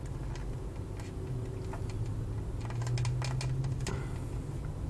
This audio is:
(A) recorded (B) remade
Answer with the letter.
A